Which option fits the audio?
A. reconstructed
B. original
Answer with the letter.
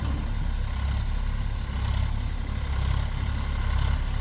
B